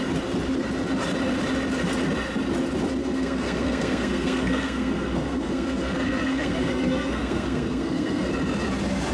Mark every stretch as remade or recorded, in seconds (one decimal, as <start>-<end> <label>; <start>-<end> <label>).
0.0-3.0 recorded; 3.0-8.3 remade; 8.3-9.1 recorded